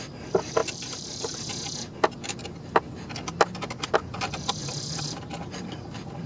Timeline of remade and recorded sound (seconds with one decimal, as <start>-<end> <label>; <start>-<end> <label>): 0.0-0.6 recorded; 0.6-1.4 remade; 1.4-4.6 recorded; 4.6-6.3 remade